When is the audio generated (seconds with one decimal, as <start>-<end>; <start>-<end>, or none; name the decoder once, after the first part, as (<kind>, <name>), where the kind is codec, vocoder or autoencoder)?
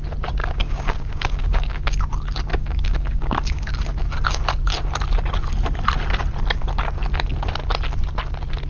0.4-2.0 (codec, DAC); 2.5-3.7